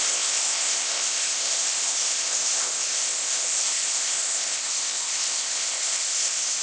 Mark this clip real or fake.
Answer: fake